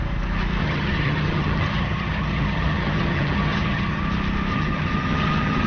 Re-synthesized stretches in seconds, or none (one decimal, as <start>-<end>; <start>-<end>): 0.6-4.0; 4.5-5.7